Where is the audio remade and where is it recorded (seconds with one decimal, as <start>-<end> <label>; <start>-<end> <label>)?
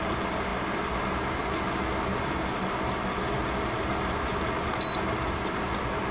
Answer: 0.0-6.1 recorded